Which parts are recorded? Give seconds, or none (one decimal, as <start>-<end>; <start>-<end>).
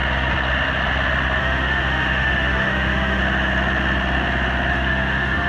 0.0-1.4; 3.2-4.7